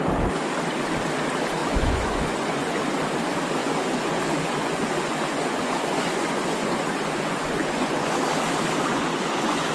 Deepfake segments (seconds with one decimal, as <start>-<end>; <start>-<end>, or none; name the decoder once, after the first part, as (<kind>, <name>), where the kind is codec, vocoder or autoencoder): 1.6-2.8 (vocoder, Vocos); 3.6-8.1; 8.9-9.7